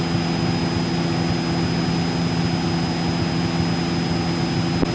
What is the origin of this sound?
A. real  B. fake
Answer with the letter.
A